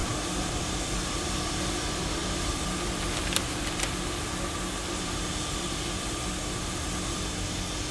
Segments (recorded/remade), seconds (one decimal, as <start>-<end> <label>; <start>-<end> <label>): 0.0-7.9 remade